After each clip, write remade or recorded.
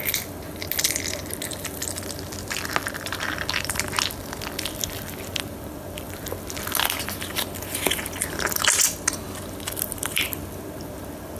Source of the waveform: recorded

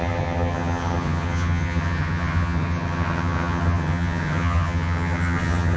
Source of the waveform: remade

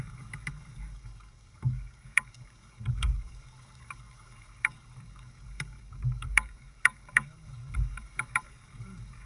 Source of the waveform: remade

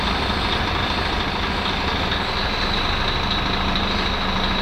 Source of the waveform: recorded